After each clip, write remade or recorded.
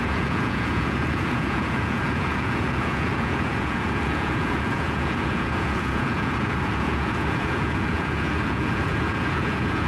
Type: remade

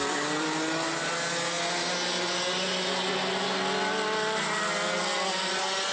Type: recorded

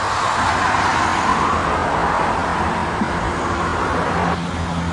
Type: recorded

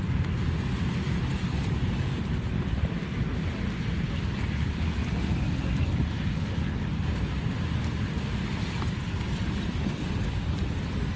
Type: recorded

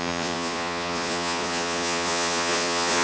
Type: remade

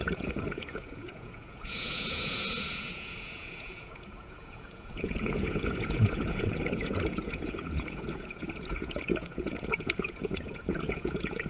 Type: remade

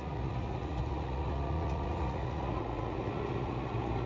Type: remade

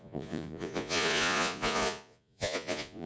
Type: remade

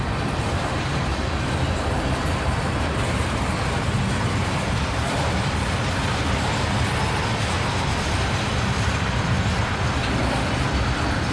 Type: recorded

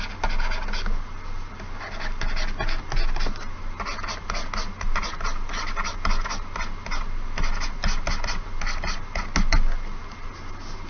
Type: recorded